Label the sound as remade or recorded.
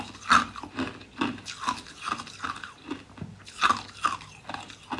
recorded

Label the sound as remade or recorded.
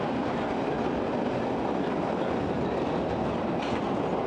recorded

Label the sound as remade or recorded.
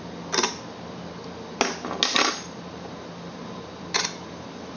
recorded